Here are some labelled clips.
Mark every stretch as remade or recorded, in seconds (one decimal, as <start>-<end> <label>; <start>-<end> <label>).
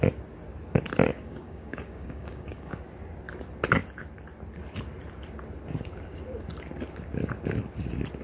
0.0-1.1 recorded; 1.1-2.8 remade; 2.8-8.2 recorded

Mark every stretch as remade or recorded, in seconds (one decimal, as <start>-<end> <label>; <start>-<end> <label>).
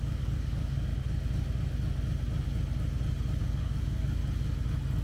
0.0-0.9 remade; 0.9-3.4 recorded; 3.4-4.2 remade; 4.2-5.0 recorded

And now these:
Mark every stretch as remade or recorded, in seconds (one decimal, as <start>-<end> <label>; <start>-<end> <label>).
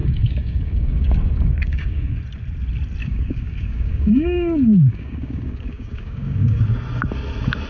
0.0-2.2 remade; 2.2-3.0 recorded; 3.0-6.6 remade; 6.6-7.7 recorded